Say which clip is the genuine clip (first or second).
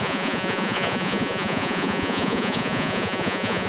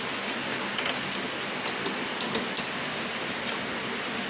second